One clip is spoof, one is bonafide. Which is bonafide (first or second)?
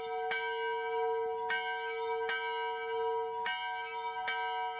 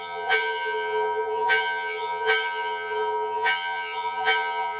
first